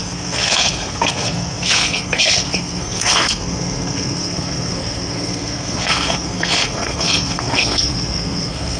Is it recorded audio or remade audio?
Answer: remade